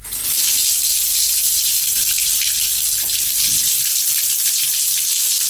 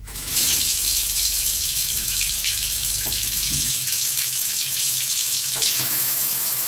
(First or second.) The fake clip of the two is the second